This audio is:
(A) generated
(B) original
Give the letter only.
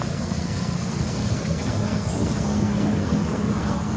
A